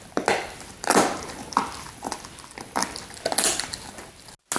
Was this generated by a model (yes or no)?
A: no